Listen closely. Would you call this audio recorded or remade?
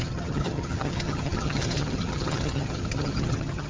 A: remade